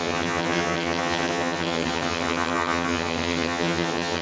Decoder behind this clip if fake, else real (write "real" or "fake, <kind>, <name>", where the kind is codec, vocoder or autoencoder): fake, vocoder, HiFi-GAN